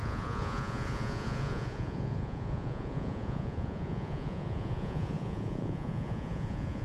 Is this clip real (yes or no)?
no